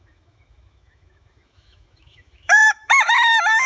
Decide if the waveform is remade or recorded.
remade